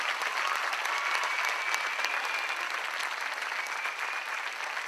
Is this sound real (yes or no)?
no